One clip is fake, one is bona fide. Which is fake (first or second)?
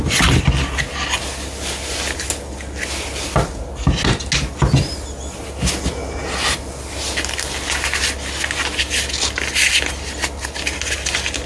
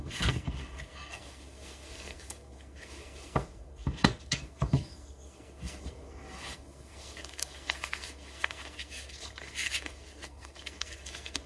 second